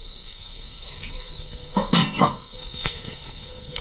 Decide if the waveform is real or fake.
fake